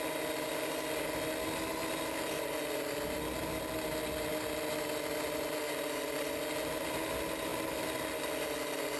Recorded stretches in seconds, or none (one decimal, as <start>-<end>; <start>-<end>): 0.0-9.0